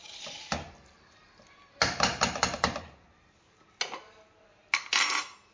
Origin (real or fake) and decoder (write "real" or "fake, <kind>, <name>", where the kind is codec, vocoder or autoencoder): real